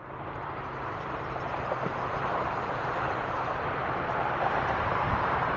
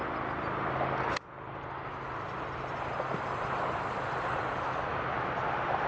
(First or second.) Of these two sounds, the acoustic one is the second